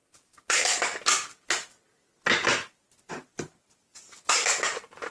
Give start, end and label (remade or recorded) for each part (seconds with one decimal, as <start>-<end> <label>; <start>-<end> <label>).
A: 0.0-3.1 recorded; 3.1-5.1 remade